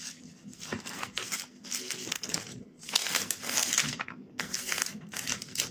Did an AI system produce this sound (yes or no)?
yes